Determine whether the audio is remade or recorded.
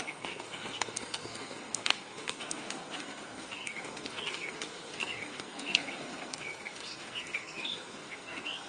remade